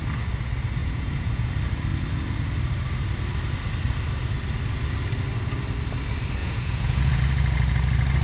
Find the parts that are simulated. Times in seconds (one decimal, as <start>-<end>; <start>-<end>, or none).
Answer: 0.8-1.5; 6.4-7.2